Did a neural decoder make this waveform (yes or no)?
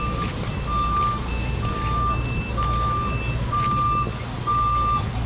no